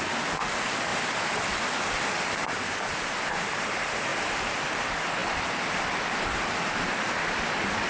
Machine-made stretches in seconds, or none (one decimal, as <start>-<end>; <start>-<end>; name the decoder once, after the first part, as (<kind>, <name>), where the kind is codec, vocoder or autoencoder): none